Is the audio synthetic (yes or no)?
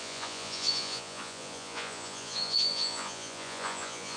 yes